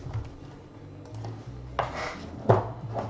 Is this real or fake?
real